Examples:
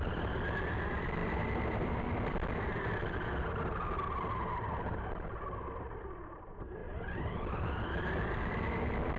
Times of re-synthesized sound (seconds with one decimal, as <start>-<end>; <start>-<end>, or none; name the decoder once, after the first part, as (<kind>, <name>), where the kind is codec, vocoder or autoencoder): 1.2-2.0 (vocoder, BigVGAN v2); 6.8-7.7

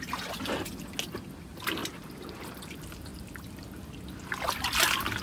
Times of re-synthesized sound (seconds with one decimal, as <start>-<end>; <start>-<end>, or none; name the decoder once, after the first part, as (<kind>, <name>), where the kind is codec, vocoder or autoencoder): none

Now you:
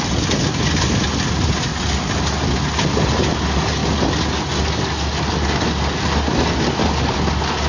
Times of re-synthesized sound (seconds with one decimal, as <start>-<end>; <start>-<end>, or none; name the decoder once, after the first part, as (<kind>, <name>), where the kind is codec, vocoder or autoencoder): none

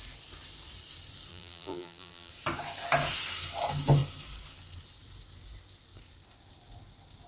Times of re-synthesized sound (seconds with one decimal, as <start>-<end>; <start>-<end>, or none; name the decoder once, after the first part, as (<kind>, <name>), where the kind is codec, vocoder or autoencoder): 1.3-2.3 (vocoder, BigVGAN v2)